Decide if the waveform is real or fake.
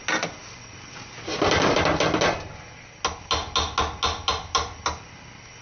real